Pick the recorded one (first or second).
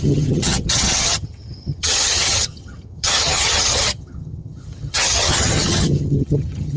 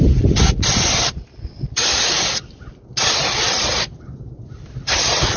second